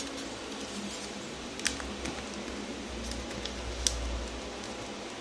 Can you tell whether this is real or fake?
real